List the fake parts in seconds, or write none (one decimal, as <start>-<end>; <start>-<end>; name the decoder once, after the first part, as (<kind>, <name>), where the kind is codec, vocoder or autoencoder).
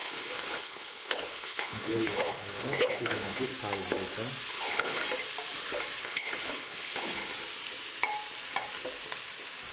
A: 0.0-3.5 (codec, HILCodec); 4.5-5.0; 6.0-7.2